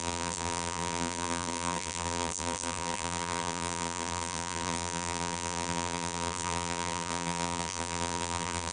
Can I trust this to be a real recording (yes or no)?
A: no